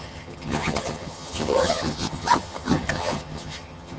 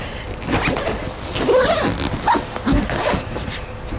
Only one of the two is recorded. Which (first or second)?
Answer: second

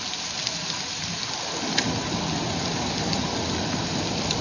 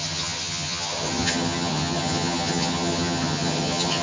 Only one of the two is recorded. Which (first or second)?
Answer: first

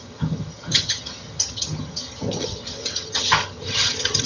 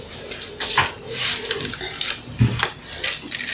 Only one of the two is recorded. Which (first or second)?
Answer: second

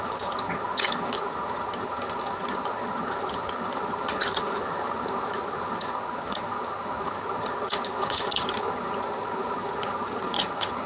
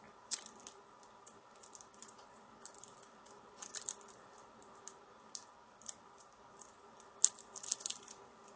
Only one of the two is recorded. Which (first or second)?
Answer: second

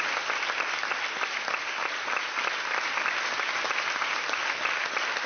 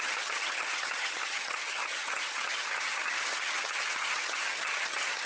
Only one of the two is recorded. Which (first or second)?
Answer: first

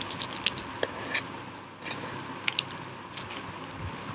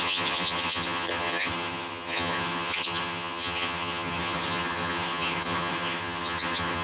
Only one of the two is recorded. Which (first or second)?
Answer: first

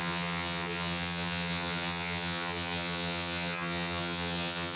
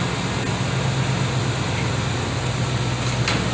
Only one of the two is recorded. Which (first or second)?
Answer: second